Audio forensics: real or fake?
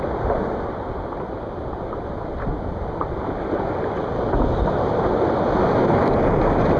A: real